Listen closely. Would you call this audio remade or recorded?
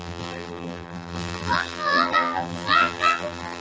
remade